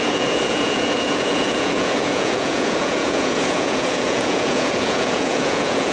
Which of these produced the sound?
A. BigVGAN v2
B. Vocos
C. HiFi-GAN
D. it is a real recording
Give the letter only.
B